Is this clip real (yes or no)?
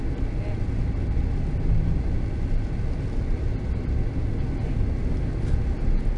yes